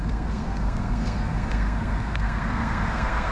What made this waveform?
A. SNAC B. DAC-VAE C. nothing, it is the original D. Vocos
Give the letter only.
A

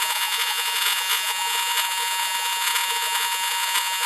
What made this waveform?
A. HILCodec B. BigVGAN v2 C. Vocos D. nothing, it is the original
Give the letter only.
C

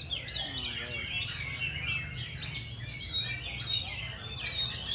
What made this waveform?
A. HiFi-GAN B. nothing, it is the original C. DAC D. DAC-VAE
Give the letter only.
B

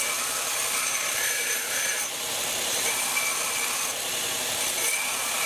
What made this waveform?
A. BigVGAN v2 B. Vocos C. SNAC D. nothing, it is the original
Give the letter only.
D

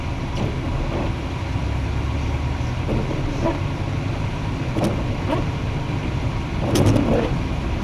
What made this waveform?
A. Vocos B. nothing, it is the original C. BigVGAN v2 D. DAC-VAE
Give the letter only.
B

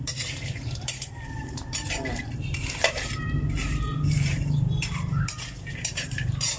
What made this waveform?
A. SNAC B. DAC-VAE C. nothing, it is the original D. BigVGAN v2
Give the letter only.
D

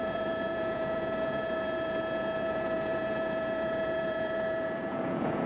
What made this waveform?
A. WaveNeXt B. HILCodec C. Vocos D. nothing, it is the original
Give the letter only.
C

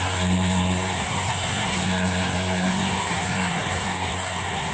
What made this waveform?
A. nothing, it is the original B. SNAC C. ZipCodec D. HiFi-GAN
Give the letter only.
B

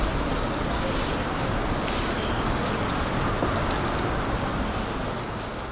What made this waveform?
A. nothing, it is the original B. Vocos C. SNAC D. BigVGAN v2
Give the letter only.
A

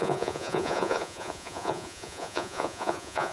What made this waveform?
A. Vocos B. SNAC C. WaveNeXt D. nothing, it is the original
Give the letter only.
A